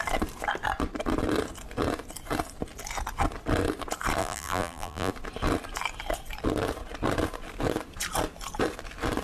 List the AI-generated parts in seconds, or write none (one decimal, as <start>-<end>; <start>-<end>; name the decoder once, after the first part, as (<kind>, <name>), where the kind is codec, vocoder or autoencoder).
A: 4.2-5.1 (vocoder, BigVGAN v2)